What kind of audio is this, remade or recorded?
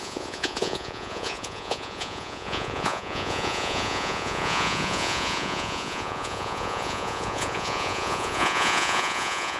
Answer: remade